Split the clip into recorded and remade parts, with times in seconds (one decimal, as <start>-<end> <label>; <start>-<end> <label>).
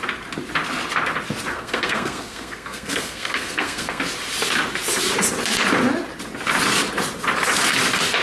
0.0-1.5 recorded; 1.5-4.0 remade; 4.0-8.2 recorded